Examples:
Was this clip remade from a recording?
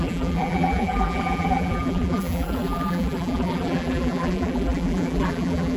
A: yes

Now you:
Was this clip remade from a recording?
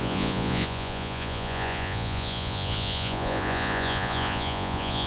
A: yes